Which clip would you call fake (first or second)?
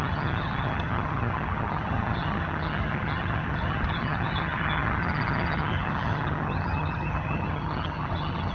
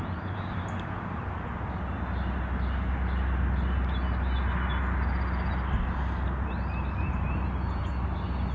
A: first